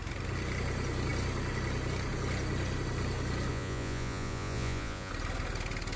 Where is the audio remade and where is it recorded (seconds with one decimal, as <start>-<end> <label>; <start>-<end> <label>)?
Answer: 0.0-3.5 recorded; 3.5-5.1 remade; 5.1-6.0 recorded